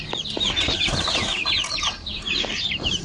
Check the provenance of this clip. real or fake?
fake